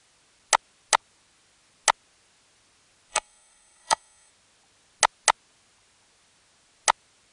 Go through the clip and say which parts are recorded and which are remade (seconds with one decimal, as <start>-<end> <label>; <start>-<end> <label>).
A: 0.0-3.1 recorded; 3.1-4.3 remade; 4.3-7.3 recorded